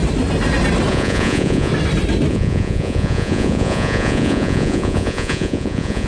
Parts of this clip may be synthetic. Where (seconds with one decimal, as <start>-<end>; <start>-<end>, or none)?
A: 0.9-1.7; 2.3-6.1